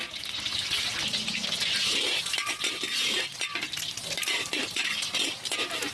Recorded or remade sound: recorded